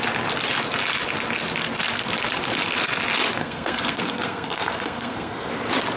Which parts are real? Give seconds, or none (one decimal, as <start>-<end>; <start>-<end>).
0.0-3.4; 5.5-6.0

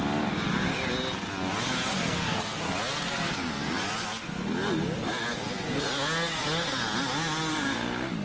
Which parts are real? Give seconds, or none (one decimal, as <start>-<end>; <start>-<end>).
0.0-1.9; 2.6-8.2

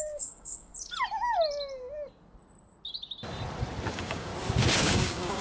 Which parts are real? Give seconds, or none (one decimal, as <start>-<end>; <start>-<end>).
0.7-3.9; 4.3-4.8

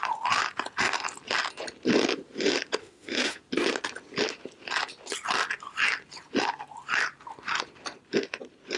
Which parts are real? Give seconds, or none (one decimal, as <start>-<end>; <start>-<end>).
0.0-2.8; 3.4-8.8

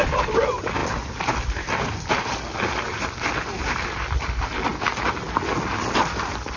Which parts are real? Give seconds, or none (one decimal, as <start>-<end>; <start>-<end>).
0.0-0.8; 3.6-6.6

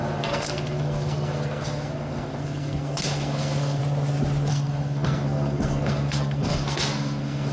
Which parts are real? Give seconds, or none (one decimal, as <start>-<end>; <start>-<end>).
3.8-4.5

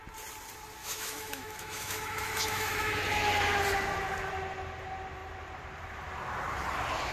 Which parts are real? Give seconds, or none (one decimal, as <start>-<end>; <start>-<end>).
0.0-0.8; 3.0-7.1